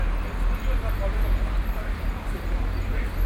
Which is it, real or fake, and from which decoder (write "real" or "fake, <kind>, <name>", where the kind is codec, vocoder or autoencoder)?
real